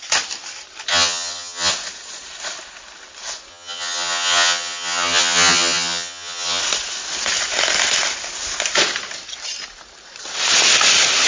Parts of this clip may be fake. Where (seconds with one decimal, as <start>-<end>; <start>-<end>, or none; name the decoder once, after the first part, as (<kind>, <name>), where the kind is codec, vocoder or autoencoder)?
0.9-1.7 (vocoder, HiFi-GAN); 3.5-6.6